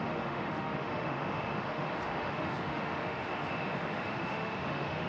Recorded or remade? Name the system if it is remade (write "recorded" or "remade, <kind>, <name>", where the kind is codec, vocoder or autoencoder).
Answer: remade, autoencoder, DAC-VAE